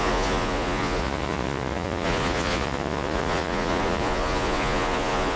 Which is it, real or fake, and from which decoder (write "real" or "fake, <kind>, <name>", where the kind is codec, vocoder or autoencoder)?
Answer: fake, vocoder, Vocos